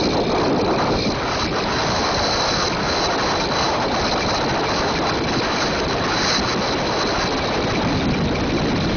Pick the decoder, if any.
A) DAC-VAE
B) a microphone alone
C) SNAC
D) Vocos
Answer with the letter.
B